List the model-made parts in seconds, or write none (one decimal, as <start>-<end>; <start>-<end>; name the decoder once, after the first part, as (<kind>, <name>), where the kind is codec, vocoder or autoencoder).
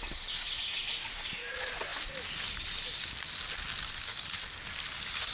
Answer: none